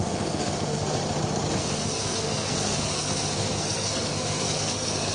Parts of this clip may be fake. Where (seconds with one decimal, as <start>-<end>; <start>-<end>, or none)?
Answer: 0.0-1.0; 1.5-5.1